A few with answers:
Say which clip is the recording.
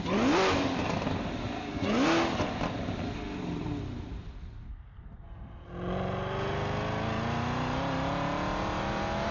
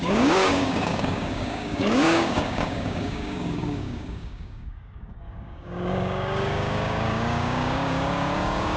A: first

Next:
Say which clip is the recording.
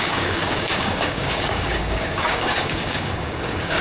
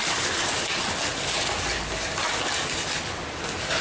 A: second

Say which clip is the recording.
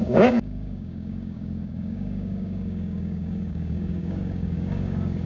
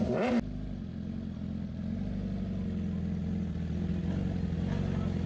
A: second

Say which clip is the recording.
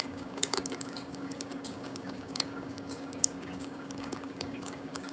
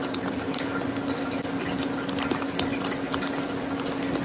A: second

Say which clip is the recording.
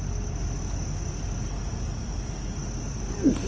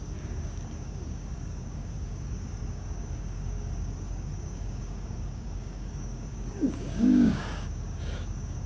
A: first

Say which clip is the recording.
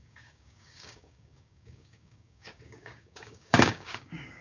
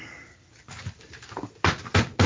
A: second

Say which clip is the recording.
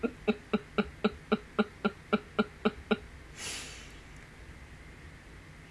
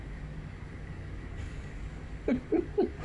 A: first